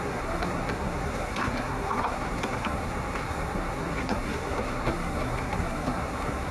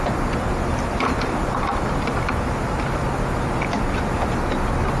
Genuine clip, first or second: second